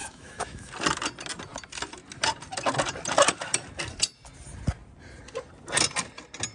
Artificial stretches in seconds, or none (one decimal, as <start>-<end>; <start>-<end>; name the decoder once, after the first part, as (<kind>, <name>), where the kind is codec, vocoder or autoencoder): 0.0-0.7 (autoencoder, DAC-VAE)